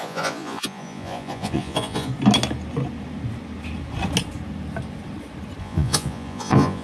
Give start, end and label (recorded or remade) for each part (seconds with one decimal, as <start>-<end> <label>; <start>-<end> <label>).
0.0-2.1 remade; 2.1-5.6 recorded; 5.6-6.8 remade